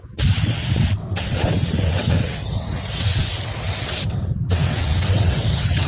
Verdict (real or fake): fake